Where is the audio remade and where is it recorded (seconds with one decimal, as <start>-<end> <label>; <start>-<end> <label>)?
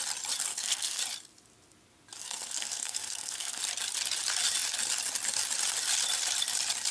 0.0-0.5 recorded; 0.5-1.0 remade; 1.0-2.2 recorded; 2.2-3.6 remade; 3.6-6.9 recorded